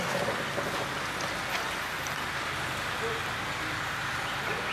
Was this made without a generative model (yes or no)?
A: yes